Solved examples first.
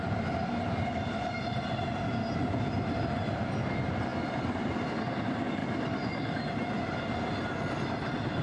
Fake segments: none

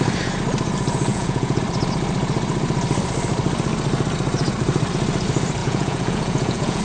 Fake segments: 1.1-1.6; 5.6-6.8

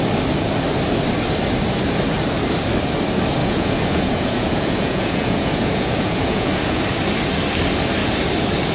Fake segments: 3.4-6.8

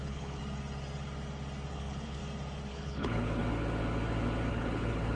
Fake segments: 0.0-0.4; 1.7-2.2; 2.7-3.4; 4.5-5.2

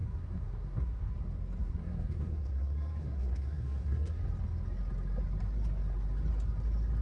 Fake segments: 0.0-1.1; 1.6-4.2

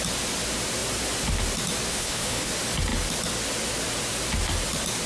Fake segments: 1.9-2.5